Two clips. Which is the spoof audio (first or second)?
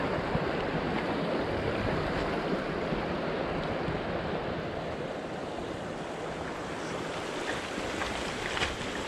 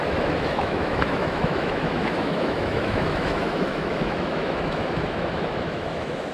second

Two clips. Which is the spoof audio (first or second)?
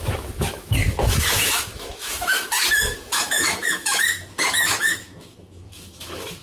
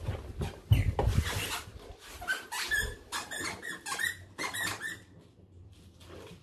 first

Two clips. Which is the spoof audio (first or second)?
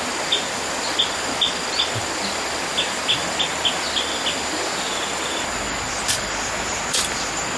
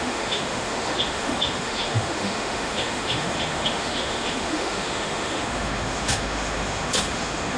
second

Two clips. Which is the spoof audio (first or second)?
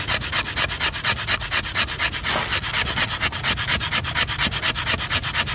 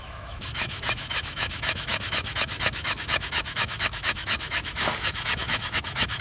second